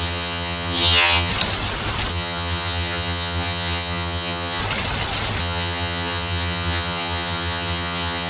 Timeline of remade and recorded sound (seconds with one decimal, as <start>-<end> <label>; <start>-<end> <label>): 0.0-1.3 remade; 1.3-2.1 recorded; 2.1-4.6 remade; 4.6-5.4 recorded; 5.4-8.3 remade